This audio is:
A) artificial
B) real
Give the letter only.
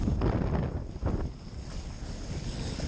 B